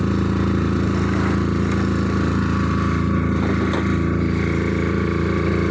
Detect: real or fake real